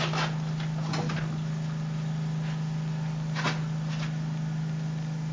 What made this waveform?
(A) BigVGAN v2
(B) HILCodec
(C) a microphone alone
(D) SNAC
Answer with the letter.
C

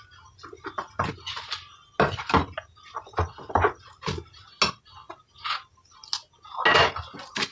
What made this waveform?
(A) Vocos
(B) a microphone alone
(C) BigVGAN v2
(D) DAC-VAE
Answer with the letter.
B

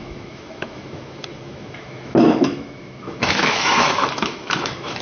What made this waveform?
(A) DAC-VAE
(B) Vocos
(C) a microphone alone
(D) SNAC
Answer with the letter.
A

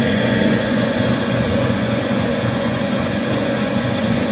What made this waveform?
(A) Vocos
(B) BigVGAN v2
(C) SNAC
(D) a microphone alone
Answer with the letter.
A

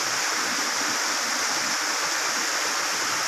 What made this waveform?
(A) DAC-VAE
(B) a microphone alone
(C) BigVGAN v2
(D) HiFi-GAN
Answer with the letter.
B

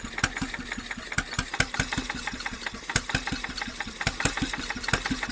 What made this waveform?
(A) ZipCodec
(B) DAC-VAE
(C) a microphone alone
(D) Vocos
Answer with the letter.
C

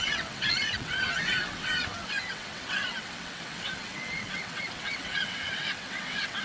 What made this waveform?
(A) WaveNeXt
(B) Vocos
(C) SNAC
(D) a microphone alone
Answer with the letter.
A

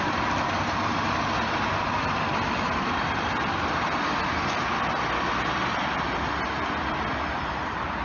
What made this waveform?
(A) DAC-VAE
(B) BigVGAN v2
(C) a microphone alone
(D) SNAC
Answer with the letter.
C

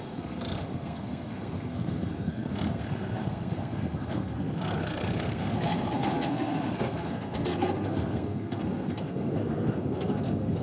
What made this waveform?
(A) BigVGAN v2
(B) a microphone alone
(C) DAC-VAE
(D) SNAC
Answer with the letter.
D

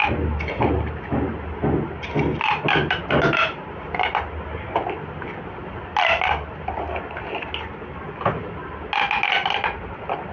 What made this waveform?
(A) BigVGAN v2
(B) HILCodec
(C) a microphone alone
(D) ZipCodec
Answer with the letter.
C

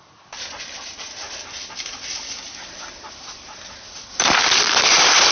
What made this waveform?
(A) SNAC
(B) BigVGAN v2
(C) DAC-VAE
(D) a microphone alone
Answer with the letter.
D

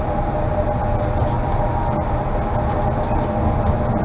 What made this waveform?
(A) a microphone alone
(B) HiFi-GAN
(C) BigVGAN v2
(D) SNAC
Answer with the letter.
A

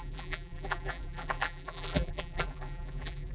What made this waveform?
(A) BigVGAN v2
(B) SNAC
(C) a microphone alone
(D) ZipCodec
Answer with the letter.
A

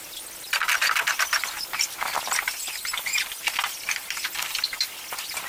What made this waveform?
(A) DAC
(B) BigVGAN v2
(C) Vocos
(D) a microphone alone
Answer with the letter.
D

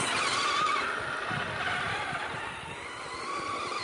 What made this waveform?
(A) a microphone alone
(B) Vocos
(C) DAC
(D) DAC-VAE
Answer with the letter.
A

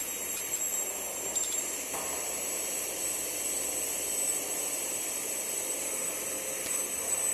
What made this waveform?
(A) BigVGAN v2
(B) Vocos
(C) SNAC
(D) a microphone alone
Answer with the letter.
A